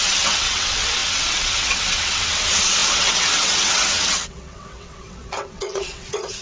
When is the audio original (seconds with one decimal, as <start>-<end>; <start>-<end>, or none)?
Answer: none